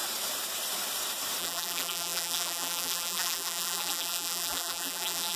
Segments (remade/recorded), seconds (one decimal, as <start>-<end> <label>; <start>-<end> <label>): 0.0-1.4 recorded; 1.4-5.4 remade